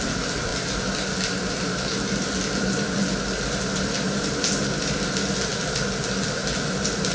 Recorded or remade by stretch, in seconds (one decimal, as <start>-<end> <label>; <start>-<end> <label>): 0.0-7.1 recorded